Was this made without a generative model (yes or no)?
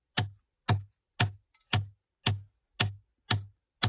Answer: yes